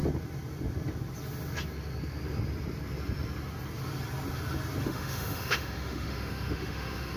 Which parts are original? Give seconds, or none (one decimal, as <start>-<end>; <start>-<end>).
0.0-4.8